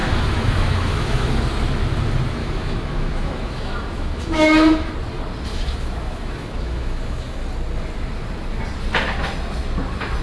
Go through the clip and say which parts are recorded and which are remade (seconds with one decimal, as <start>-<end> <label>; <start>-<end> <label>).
0.0-1.3 remade; 1.3-2.4 recorded; 2.4-4.9 remade; 4.9-5.5 recorded; 5.5-7.4 remade; 7.4-10.2 recorded